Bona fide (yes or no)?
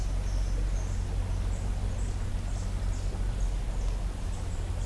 yes